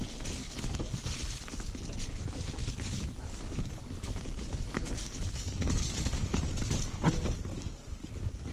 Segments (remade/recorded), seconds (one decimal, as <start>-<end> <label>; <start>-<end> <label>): 0.0-0.4 recorded; 0.4-1.1 remade; 1.1-2.6 recorded; 2.6-6.8 remade; 6.8-7.5 recorded; 7.5-8.1 remade; 8.1-8.5 recorded